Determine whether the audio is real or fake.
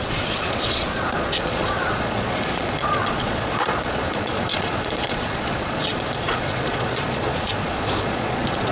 fake